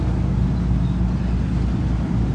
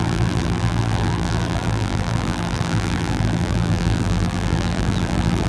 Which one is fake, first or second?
second